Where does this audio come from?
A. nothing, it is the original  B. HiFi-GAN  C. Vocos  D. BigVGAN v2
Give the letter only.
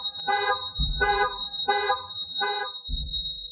D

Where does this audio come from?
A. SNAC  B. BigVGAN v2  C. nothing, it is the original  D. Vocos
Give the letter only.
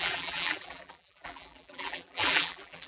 B